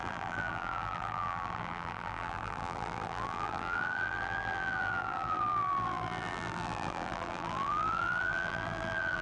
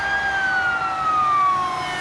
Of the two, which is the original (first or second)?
second